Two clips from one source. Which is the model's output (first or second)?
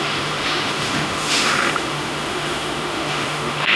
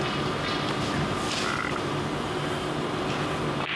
first